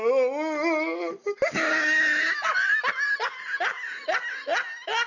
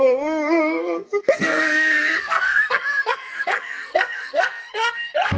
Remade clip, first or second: second